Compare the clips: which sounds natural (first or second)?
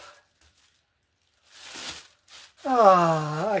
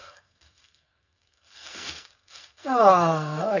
first